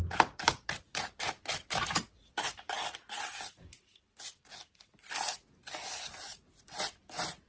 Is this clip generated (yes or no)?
no